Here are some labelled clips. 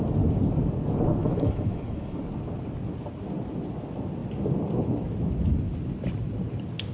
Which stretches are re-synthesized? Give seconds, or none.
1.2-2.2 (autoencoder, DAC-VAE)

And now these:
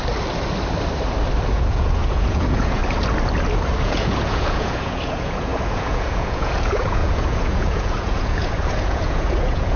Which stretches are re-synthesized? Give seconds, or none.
1.5-2.8 (vocoder, Vocos); 3.8-9.8

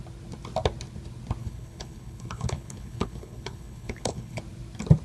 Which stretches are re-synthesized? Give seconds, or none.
1.4-4.4 (codec, HILCodec)

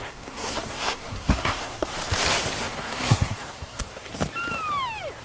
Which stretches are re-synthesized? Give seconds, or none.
0.0-1.9 (codec, SNAC); 2.6-4.1

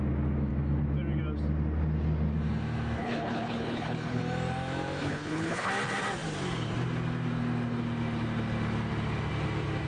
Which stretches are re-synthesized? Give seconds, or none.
3.0-4.2 (codec, HILCodec); 5.0-5.7